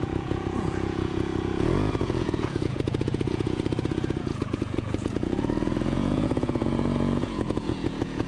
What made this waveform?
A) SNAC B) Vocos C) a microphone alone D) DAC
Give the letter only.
B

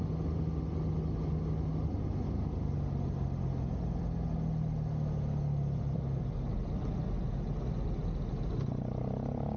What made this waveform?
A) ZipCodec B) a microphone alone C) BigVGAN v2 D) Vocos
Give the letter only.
B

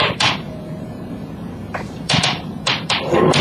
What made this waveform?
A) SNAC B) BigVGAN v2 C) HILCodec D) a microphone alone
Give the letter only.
B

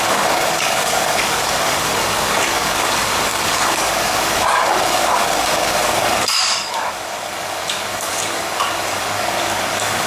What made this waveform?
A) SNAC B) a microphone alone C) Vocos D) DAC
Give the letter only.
D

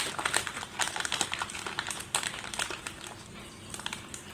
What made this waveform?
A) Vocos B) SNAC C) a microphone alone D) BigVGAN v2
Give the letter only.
C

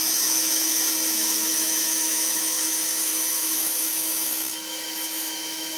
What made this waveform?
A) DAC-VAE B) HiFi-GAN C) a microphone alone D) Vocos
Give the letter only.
A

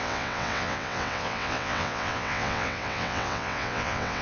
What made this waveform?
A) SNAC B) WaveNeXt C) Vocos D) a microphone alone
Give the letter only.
B